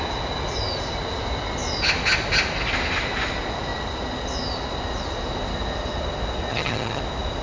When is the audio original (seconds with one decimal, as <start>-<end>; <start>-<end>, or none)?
0.0-6.5; 7.0-7.4